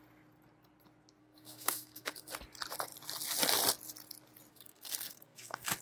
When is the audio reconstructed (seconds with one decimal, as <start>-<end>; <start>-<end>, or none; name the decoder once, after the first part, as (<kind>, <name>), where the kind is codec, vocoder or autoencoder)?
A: 1.2-2.3 (codec, SNAC); 4.5-5.8